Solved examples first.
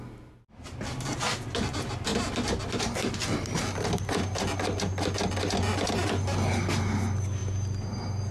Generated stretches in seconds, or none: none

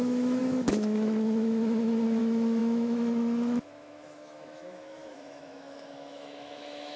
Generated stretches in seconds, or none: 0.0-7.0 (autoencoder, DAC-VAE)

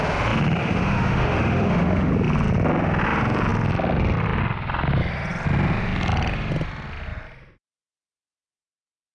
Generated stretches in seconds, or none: 0.6-2.1 (autoencoder, DAC-VAE)

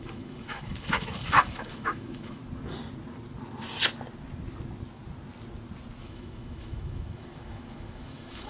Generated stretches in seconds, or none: 0.0-2.4 (autoencoder, DAC-VAE); 6.0-8.5

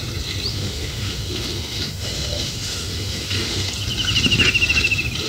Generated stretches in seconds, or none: 0.5-3.7 (autoencoder, DAC-VAE)

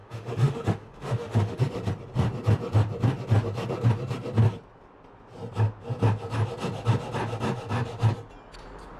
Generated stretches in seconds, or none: 0.0-1.6 (autoencoder, DAC-VAE)